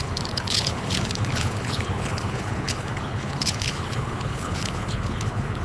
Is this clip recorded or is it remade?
remade